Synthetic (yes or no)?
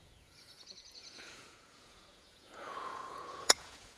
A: yes